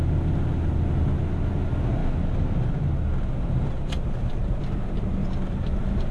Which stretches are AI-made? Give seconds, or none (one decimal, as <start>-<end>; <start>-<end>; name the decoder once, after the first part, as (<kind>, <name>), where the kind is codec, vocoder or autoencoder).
none